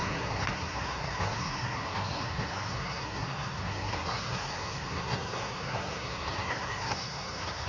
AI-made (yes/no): yes